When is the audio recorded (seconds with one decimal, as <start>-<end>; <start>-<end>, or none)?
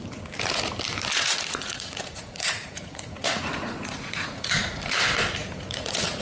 0.0-1.1; 4.8-5.4